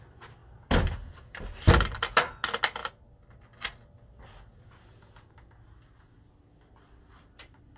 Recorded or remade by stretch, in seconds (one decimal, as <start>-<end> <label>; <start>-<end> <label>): 0.0-7.8 recorded